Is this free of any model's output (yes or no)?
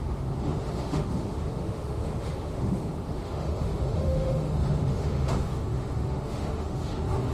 no